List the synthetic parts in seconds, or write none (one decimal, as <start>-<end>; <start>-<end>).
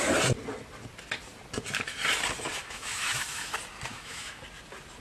2.6-3.5; 3.9-4.4